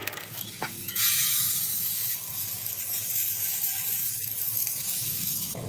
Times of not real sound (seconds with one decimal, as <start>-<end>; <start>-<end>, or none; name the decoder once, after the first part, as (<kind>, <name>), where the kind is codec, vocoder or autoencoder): 0.0-5.7 (codec, DAC)